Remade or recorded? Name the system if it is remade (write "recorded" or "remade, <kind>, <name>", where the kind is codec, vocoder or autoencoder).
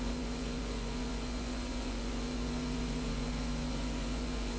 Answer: remade, vocoder, Vocos